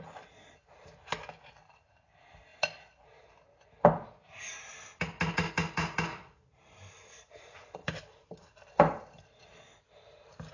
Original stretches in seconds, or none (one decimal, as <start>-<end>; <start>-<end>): 0.0-10.5